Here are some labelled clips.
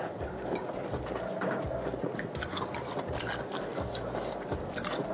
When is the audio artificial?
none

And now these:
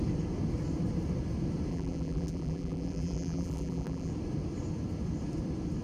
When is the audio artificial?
1.7-4.1 (vocoder, BigVGAN v2)

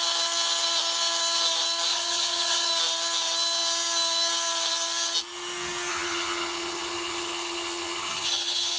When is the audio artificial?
1.9-2.7 (vocoder, HiFi-GAN); 5.9-8.8